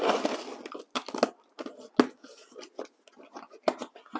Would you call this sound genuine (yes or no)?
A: yes